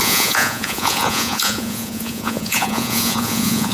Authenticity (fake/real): fake